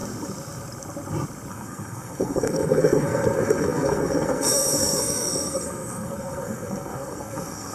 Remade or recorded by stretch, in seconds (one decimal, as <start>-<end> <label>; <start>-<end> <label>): 0.0-1.5 recorded; 1.5-7.7 remade